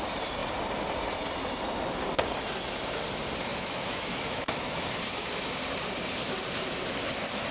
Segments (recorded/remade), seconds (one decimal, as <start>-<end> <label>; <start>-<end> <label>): 0.0-3.5 recorded; 3.5-4.9 remade; 4.9-7.5 recorded